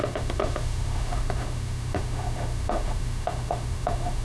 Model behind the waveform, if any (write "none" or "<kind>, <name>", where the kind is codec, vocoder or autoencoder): autoencoder, DAC-VAE